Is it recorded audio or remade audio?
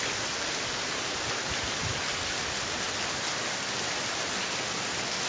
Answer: recorded